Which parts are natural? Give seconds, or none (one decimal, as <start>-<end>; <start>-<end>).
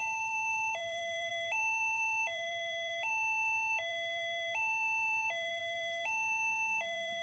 none